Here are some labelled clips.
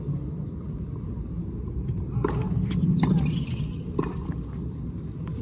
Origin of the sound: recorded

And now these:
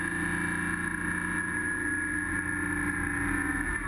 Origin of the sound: recorded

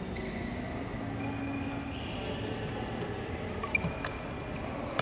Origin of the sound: recorded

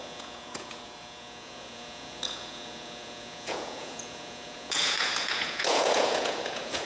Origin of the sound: remade